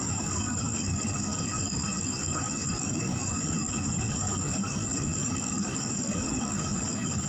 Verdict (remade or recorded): remade